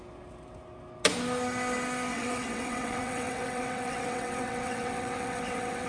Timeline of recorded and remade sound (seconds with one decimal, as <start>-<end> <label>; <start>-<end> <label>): 0.0-2.1 recorded; 2.1-5.9 remade